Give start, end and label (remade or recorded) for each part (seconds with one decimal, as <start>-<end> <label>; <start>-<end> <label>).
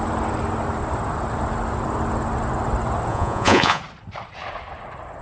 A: 0.0-3.1 recorded; 3.1-3.8 remade; 3.8-5.2 recorded